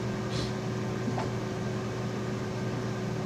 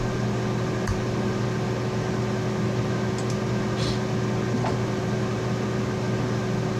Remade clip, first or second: first